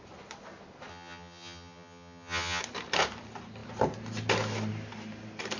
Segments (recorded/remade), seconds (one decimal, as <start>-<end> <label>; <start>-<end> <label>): 0.0-0.9 recorded; 0.9-2.6 remade; 2.6-5.6 recorded